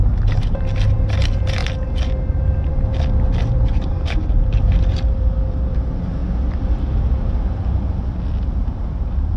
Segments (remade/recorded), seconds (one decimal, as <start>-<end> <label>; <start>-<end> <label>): 0.0-1.6 remade; 1.6-2.7 recorded; 2.7-6.2 remade; 6.2-9.0 recorded; 9.0-9.4 remade

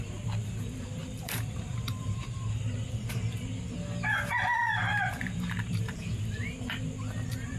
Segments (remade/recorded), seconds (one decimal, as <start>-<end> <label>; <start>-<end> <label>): 0.0-1.0 recorded; 1.0-3.1 remade; 3.1-5.1 recorded; 5.1-6.5 remade; 6.5-7.6 recorded

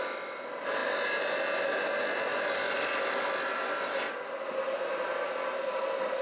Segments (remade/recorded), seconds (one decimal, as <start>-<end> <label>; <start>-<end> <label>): 0.0-6.2 recorded

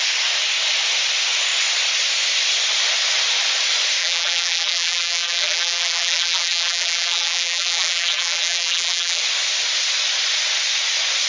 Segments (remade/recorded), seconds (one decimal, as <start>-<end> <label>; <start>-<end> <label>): 0.0-4.0 recorded; 4.0-9.2 remade; 9.2-11.3 recorded

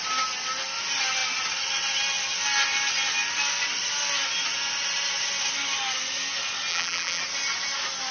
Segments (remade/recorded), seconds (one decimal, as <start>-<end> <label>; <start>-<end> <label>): 0.0-6.7 recorded; 6.7-7.2 remade; 7.2-8.1 recorded